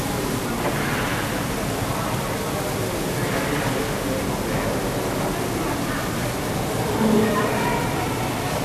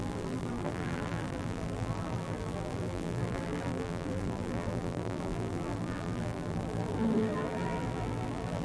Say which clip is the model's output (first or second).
second